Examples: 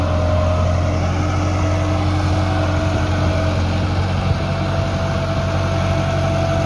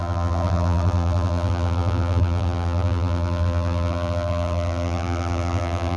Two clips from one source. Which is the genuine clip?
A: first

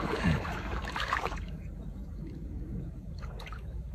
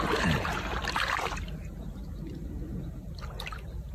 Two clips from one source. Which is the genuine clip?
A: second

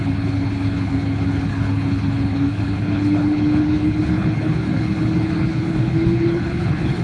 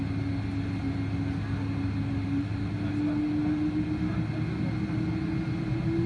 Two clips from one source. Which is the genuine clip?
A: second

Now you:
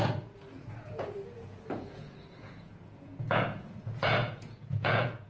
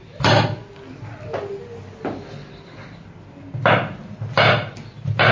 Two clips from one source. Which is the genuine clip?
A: second